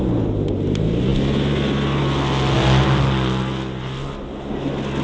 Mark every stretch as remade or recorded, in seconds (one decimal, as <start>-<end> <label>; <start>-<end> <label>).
0.0-5.0 recorded